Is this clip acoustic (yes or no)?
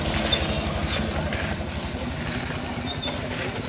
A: yes